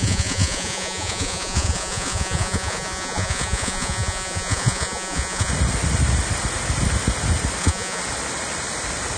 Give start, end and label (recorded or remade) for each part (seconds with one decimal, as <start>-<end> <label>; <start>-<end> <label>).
0.0-5.5 remade; 5.5-7.6 recorded; 7.6-8.0 remade; 8.0-9.2 recorded